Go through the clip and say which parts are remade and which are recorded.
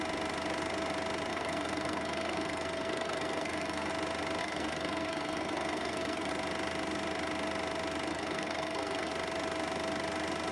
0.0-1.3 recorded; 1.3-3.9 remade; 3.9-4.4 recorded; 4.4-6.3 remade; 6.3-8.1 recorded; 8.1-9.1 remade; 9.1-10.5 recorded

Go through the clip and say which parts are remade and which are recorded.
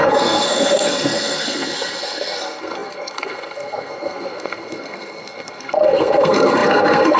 0.0-7.2 remade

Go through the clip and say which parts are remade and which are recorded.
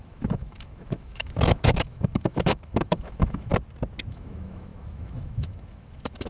0.0-3.5 remade; 3.5-4.1 recorded; 4.1-6.3 remade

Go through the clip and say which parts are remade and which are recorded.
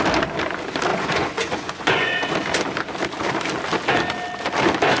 0.0-0.9 recorded; 0.9-2.3 remade; 2.3-5.0 recorded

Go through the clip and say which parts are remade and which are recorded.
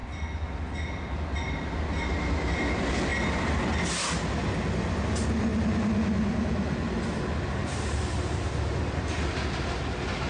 0.0-3.1 recorded; 3.1-3.6 remade; 3.6-10.3 recorded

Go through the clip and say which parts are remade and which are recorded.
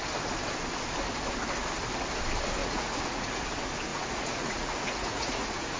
0.0-2.6 recorded; 2.6-3.4 remade; 3.4-3.9 recorded; 3.9-5.8 remade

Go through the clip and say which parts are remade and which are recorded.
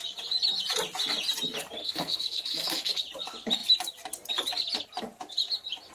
0.0-1.8 recorded; 1.8-3.0 remade; 3.0-5.9 recorded